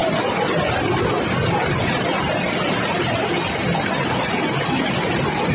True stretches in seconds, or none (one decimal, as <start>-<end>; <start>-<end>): 0.0-5.5